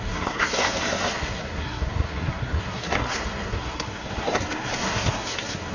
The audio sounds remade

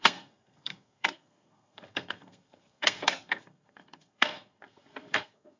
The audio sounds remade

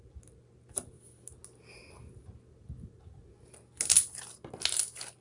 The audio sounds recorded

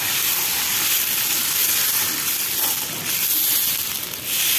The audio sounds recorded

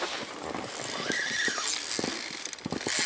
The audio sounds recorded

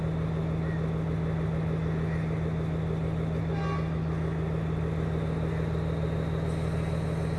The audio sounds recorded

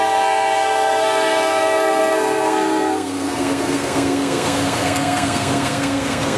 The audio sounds remade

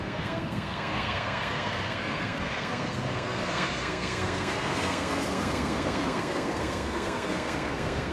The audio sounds remade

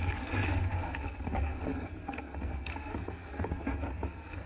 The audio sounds remade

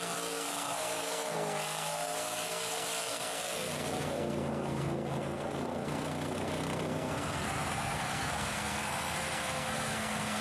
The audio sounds remade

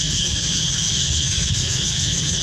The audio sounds remade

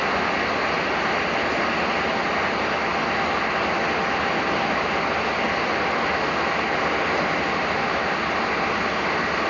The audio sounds recorded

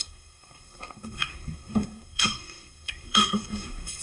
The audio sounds remade